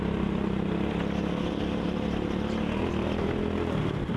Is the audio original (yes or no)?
yes